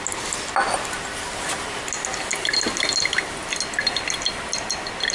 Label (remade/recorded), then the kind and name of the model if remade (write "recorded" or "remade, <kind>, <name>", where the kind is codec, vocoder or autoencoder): recorded